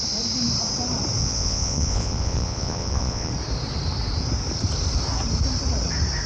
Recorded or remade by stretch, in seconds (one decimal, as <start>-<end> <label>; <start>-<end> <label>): 0.0-1.2 recorded; 1.2-3.3 remade; 3.3-6.3 recorded